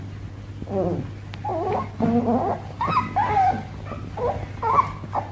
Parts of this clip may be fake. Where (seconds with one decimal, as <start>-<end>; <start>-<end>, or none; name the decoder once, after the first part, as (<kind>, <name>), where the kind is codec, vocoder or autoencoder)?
none